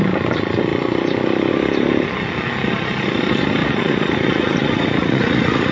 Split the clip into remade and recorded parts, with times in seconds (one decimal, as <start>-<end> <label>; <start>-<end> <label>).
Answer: 0.0-3.6 recorded; 3.6-5.7 remade